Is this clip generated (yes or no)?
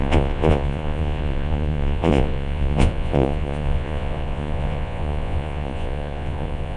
yes